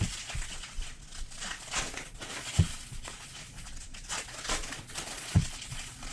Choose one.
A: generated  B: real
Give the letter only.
A